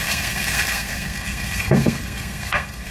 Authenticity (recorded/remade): remade